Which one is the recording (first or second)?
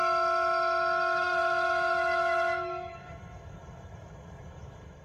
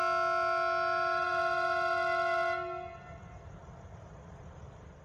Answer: second